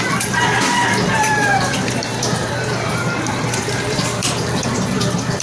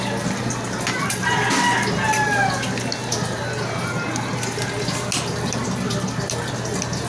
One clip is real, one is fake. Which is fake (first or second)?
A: first